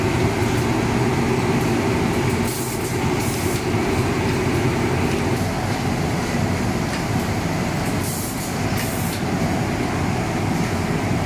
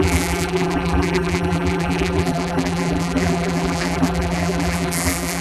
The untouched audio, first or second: first